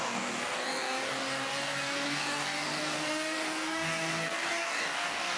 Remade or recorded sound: remade